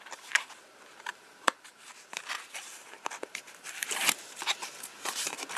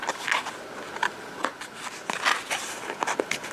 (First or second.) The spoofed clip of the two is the first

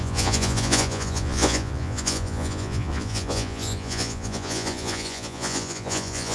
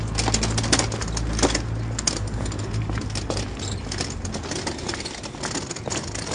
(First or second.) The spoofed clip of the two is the first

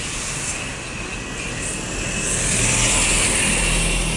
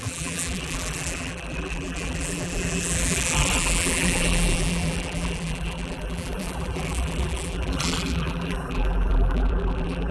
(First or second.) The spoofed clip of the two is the second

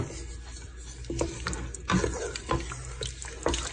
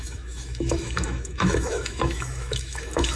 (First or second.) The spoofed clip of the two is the second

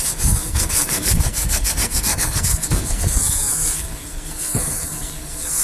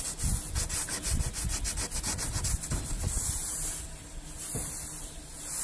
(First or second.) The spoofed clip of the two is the first